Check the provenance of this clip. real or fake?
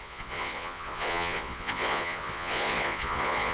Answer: fake